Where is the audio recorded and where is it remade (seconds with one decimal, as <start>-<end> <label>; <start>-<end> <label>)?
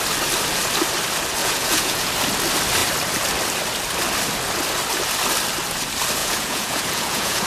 0.0-1.4 recorded; 1.4-2.1 remade; 2.1-6.2 recorded; 6.2-7.5 remade